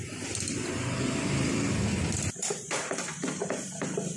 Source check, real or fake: fake